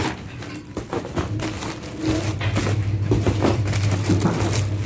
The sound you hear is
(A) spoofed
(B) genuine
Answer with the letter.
B